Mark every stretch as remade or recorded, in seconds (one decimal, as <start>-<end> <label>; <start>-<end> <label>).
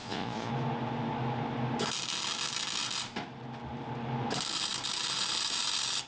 0.0-0.5 remade; 0.5-6.1 recorded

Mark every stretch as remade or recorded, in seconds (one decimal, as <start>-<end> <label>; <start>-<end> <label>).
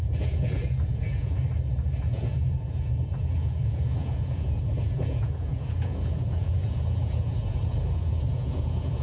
0.0-1.4 remade; 1.4-2.0 recorded; 2.0-9.0 remade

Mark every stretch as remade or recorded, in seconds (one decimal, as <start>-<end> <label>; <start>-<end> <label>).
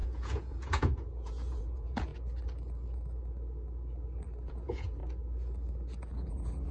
0.0-2.1 remade; 2.1-4.5 recorded; 4.5-5.0 remade; 5.0-6.1 recorded; 6.1-6.7 remade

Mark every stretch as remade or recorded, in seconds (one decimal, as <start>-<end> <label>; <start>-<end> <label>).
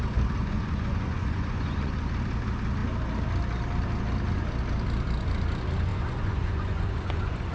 0.0-0.4 recorded; 0.4-2.1 remade; 2.1-5.9 recorded; 5.9-7.5 remade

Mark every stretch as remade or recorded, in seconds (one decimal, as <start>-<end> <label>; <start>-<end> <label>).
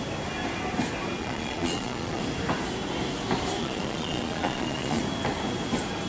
0.0-1.2 recorded; 1.2-2.2 remade; 2.2-3.6 recorded; 3.6-5.0 remade; 5.0-6.1 recorded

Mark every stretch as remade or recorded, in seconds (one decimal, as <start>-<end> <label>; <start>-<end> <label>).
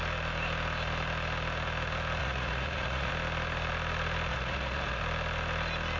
0.0-2.2 recorded; 2.2-3.1 remade; 3.1-4.3 recorded; 4.3-5.0 remade; 5.0-6.0 recorded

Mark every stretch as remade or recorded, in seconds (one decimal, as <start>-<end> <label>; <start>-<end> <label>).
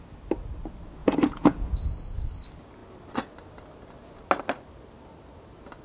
0.0-1.0 recorded; 1.0-1.9 remade; 1.9-5.8 recorded